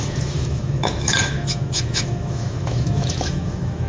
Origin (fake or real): fake